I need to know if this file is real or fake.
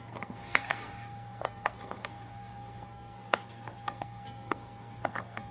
fake